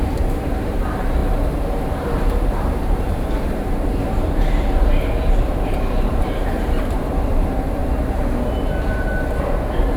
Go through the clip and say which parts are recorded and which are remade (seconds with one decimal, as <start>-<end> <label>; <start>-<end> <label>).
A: 0.0-7.8 remade; 7.8-9.4 recorded; 9.4-10.0 remade